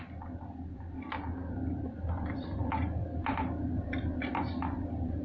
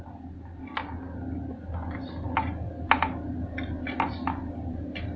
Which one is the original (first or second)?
second